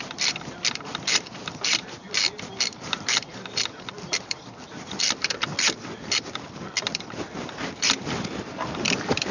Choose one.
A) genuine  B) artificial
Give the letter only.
B